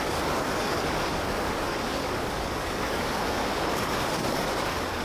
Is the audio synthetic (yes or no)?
yes